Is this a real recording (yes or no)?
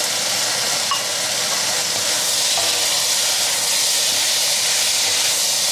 yes